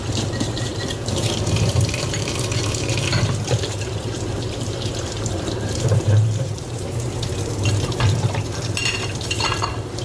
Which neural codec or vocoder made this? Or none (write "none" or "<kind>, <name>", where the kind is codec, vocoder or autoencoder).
vocoder, BigVGAN v2